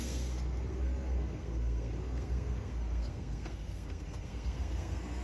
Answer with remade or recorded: remade